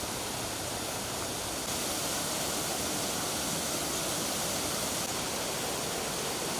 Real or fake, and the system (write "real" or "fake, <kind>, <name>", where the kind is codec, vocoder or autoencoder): real